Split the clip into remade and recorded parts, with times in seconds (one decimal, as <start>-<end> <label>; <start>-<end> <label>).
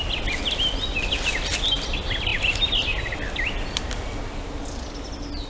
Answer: 0.0-5.5 recorded